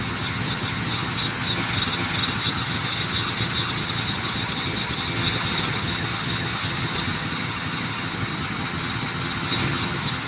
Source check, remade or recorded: remade